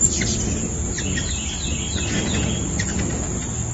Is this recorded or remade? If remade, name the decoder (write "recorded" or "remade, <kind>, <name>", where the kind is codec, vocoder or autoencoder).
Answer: recorded